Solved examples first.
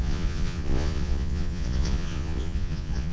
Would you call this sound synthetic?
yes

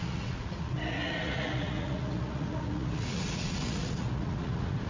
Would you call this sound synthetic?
yes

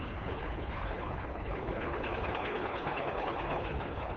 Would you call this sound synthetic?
yes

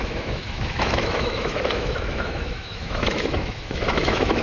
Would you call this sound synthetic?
yes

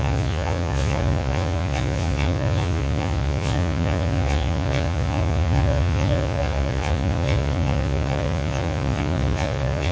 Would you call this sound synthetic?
yes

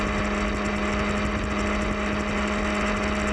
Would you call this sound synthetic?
no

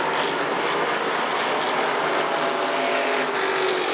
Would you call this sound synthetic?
no